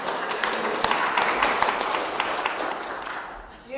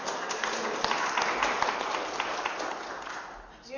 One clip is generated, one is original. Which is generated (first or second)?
first